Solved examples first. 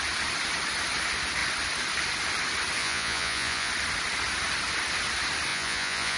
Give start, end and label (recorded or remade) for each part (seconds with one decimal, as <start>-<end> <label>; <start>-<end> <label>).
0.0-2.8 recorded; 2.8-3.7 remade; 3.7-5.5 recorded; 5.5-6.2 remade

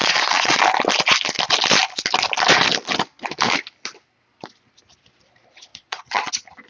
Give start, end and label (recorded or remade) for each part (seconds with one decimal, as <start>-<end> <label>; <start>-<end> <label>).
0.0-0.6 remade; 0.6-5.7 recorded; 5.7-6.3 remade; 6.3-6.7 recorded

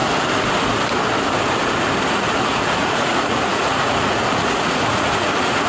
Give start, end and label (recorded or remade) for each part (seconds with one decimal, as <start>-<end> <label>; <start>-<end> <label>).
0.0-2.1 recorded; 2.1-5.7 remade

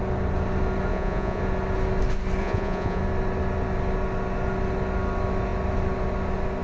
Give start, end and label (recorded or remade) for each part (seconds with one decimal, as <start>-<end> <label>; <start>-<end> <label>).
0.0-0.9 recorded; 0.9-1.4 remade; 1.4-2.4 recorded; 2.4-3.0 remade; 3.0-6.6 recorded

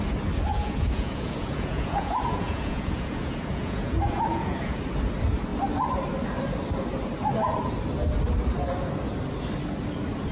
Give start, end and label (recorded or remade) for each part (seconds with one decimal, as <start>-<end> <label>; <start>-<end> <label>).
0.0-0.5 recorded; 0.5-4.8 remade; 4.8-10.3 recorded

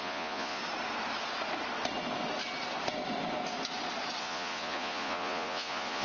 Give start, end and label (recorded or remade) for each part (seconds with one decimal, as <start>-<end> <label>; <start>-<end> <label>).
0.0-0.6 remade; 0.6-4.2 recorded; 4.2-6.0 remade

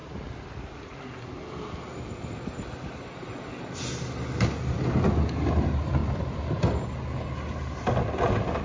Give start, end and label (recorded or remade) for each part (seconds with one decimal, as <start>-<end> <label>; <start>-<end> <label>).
0.0-8.6 recorded